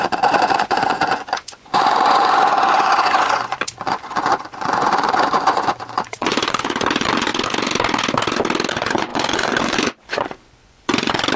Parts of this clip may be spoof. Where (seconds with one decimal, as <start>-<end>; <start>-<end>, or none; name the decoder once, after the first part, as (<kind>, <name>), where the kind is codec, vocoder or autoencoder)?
0.0-7.3 (vocoder, Vocos); 8.7-11.4